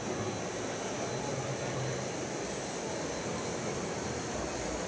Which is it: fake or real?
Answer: real